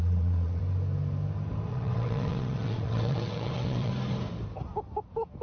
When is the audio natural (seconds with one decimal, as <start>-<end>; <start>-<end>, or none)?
0.6-1.7; 3.9-5.4